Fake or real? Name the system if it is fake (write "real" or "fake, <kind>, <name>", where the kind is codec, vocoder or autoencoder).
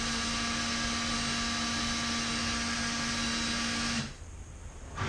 real